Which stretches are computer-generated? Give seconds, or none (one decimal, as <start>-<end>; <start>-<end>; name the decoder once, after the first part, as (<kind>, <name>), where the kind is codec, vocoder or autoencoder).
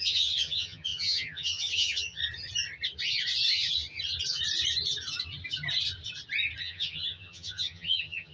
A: 0.0-2.2 (vocoder, HiFi-GAN); 6.6-8.3